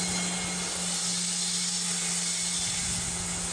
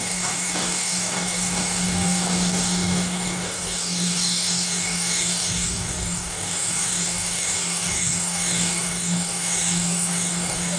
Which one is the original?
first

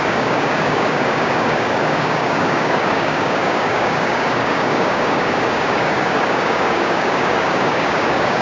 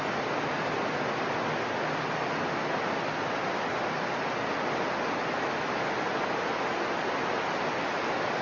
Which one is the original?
second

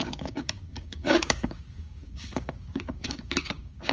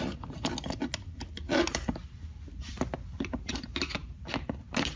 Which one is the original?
second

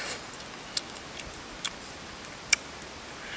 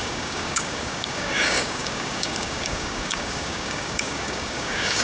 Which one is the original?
first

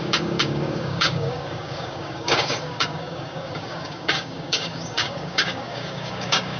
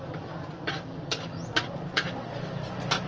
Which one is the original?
second